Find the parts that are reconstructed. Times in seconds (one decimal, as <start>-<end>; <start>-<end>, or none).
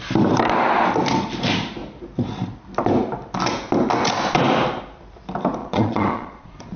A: 5.6-6.8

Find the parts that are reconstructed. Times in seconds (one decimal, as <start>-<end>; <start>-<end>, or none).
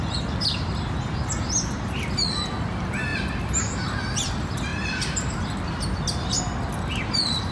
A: none